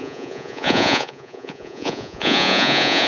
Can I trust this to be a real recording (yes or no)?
no